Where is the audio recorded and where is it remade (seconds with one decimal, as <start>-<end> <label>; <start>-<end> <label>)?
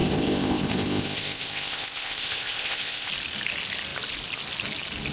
0.0-3.1 remade; 3.1-5.1 recorded